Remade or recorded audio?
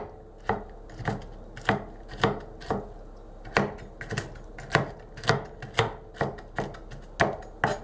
recorded